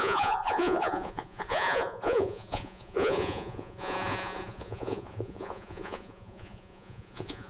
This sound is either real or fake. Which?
fake